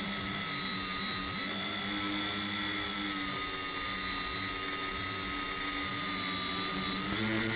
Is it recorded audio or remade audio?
recorded